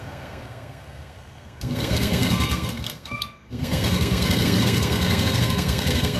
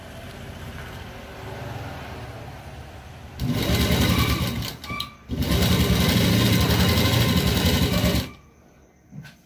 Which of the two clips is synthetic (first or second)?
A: first